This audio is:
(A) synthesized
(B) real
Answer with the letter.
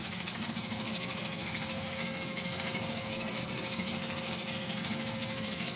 A